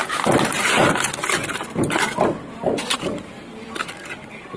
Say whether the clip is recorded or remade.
recorded